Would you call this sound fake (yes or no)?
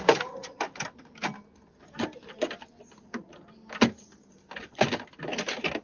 no